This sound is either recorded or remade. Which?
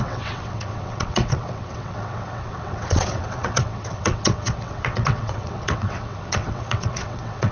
remade